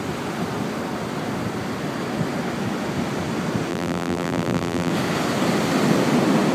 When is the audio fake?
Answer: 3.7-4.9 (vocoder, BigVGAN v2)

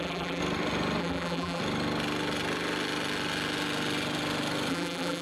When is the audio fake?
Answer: 0.0-0.4 (vocoder, BigVGAN v2); 1.0-1.6; 4.7-5.2

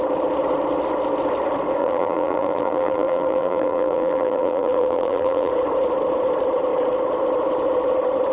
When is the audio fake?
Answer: 1.8-5.5 (vocoder, BigVGAN v2)

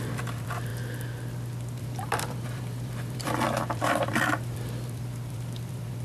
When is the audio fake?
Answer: 0.0-0.7 (vocoder, BigVGAN v2); 1.8-6.0